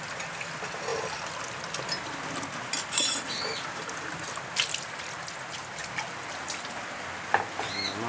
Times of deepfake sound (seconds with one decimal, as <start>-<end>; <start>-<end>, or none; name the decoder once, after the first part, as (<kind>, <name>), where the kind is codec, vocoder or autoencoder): none